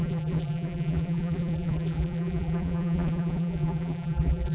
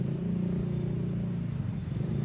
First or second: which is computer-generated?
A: first